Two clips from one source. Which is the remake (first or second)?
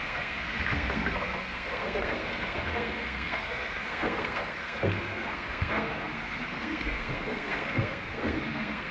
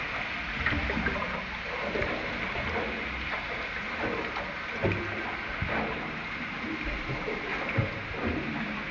first